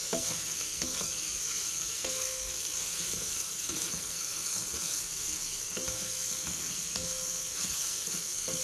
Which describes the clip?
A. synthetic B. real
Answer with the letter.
A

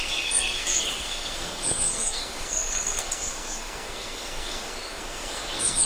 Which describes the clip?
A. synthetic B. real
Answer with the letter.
A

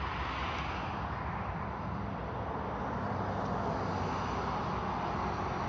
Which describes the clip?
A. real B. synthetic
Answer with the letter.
A